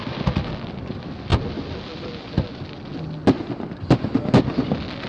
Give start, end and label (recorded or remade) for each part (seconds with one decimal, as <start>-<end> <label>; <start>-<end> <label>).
0.0-5.1 recorded